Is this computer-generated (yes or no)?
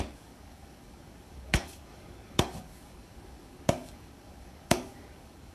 yes